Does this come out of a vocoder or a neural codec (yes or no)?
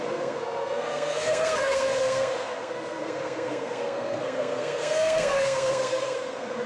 yes